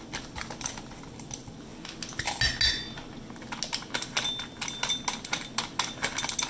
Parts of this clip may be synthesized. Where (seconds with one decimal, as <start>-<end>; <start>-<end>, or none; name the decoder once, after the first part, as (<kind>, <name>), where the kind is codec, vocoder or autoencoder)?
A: none